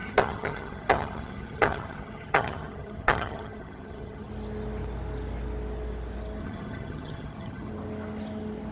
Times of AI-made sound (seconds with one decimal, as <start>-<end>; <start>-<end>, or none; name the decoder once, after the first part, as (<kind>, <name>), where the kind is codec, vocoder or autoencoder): 0.0-4.3 (vocoder, HiFi-GAN); 6.4-7.7